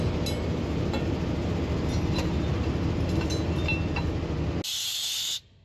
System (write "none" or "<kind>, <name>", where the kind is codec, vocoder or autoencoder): none